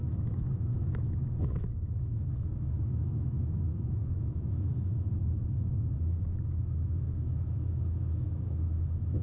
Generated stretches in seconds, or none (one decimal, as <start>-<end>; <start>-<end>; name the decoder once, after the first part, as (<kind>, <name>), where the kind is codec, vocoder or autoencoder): 0.0-9.2 (autoencoder, DAC-VAE)